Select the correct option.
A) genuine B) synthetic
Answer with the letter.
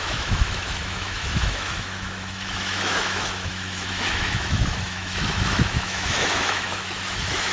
B